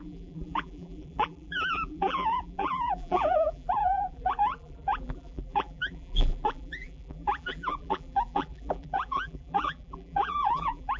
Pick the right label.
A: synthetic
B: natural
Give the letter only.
A